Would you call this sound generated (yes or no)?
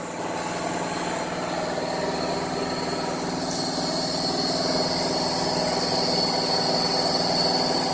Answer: no